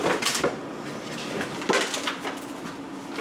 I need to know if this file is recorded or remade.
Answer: recorded